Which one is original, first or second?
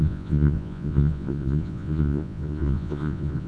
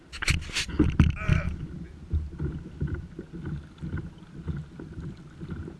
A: second